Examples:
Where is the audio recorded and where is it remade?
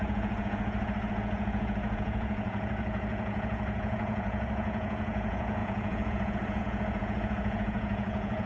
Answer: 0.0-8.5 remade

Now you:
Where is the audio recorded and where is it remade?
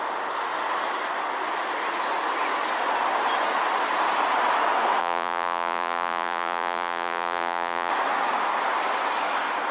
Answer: 0.0-5.0 recorded; 5.0-7.9 remade; 7.9-9.7 recorded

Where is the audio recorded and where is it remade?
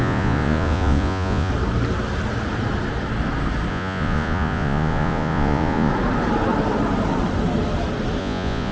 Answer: 0.0-1.5 remade; 1.5-3.7 recorded; 3.7-5.9 remade; 5.9-8.2 recorded; 8.2-8.7 remade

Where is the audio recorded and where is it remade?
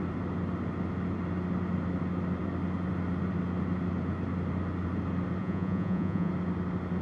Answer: 0.0-5.4 recorded; 5.4-6.3 remade; 6.3-7.0 recorded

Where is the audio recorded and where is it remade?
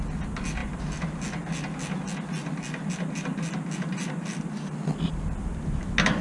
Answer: 0.0-6.2 recorded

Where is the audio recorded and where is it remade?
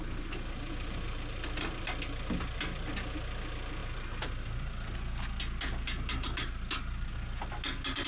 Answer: 0.0-8.1 recorded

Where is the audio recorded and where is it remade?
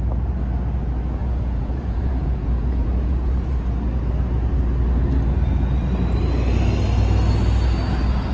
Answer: 0.0-1.2 recorded; 1.2-3.6 remade; 3.6-8.3 recorded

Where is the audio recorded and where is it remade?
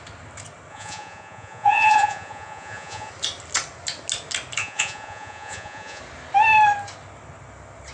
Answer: 0.0-0.7 recorded; 0.7-3.1 remade; 3.1-4.6 recorded; 4.6-6.0 remade; 6.0-7.9 recorded